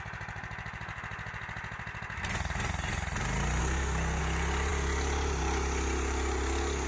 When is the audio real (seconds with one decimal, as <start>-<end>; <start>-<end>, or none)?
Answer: 0.0-3.6; 4.2-6.9